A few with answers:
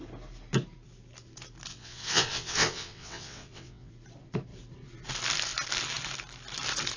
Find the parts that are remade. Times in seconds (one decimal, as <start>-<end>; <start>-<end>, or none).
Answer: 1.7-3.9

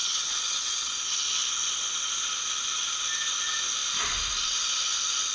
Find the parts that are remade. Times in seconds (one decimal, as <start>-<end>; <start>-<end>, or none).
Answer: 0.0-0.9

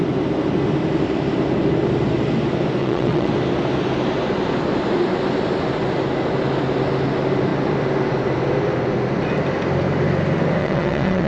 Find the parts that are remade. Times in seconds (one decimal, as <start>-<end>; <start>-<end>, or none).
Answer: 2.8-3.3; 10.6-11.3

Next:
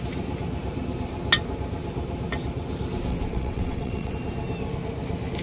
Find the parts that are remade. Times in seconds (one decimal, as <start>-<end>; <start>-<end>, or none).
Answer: 3.1-4.1